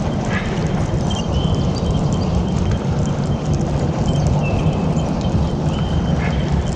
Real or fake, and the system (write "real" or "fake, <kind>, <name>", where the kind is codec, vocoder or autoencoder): fake, vocoder, BigVGAN v2